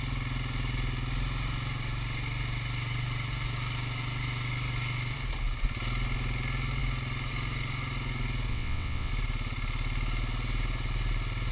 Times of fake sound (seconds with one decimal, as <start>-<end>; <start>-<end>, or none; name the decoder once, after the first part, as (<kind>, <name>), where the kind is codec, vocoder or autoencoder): 8.5-9.1 (vocoder, WaveNeXt)

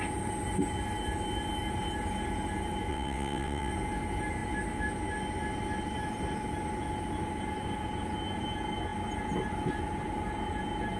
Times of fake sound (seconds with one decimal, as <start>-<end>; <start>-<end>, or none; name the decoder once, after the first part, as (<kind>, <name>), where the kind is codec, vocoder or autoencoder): 2.9-3.7 (vocoder, WaveNeXt)

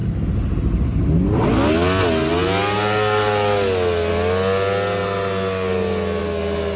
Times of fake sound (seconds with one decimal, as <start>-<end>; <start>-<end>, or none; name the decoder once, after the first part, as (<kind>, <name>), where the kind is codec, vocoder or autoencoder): none

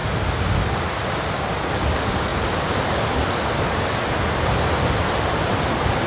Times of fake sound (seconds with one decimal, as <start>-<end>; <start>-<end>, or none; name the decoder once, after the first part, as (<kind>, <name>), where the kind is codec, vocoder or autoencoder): none

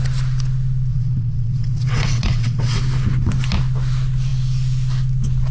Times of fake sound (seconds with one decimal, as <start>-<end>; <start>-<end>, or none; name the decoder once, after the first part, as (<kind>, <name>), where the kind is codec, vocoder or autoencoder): 0.9-2.8 (vocoder, WaveNeXt)

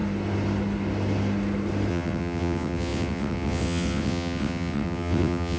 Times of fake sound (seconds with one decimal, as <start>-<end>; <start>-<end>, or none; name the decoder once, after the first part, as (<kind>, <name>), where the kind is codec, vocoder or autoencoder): 1.9-5.6 (vocoder, WaveNeXt)

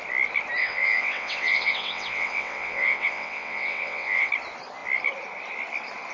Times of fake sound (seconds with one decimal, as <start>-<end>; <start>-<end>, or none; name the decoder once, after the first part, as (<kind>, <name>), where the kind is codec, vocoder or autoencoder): 0.6-4.3 (vocoder, WaveNeXt)